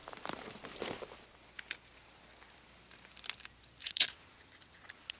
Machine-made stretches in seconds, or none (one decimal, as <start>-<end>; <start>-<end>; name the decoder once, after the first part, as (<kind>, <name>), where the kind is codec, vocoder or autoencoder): 3.8-5.2 (vocoder, Vocos)